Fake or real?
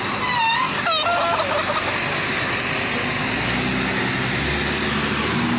real